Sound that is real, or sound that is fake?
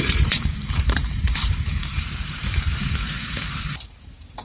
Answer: fake